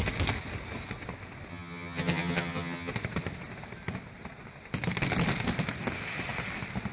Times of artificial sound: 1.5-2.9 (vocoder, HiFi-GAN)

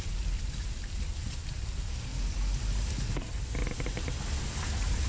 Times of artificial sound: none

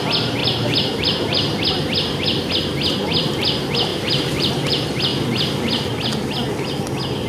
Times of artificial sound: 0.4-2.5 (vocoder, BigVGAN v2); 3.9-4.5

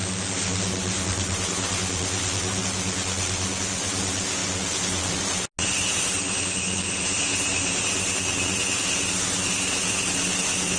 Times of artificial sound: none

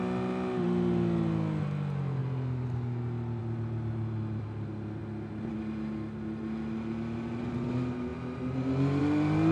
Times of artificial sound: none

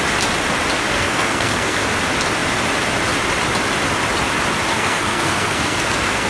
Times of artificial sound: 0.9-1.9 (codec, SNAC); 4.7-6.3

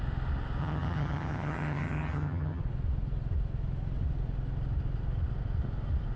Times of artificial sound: 0.6-2.6 (vocoder, HiFi-GAN)